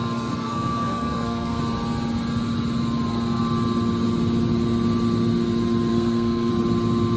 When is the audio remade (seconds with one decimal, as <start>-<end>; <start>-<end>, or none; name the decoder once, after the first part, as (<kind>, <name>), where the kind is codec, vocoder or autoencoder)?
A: 0.0-1.6 (codec, SNAC); 5.9-6.5